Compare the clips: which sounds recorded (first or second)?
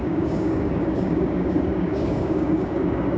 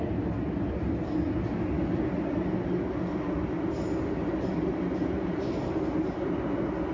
second